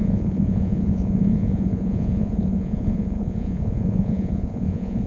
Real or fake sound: fake